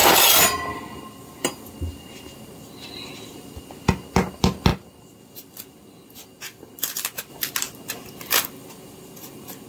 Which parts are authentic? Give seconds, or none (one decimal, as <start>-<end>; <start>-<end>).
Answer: 0.0-9.7